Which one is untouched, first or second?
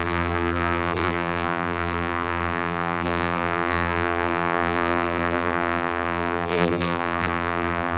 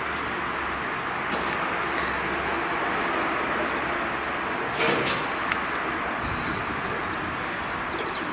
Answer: second